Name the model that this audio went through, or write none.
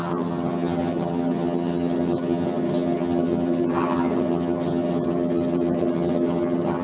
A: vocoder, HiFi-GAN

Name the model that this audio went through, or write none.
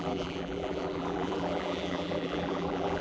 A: vocoder, BigVGAN v2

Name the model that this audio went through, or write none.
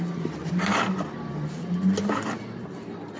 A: none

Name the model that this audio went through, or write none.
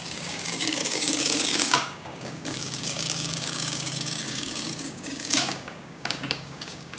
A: codec, DAC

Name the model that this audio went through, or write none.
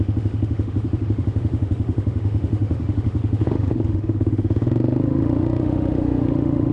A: autoencoder, DAC-VAE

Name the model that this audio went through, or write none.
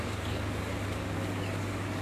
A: codec, DAC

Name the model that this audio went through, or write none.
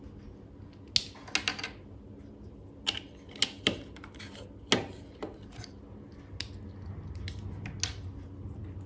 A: none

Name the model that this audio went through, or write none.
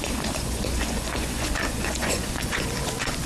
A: vocoder, Vocos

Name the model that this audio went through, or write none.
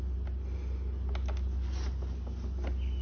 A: none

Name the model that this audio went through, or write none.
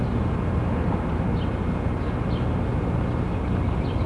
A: none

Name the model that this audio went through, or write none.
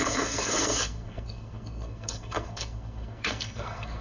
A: codec, SNAC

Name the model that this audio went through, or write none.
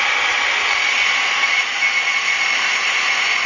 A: none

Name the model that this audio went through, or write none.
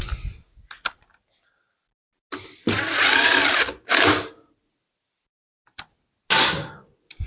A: none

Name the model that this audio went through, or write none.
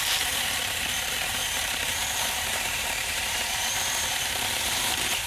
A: vocoder, BigVGAN v2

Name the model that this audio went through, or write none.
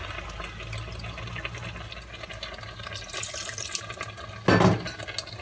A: none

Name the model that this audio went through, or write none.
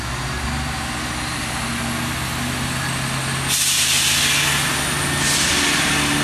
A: none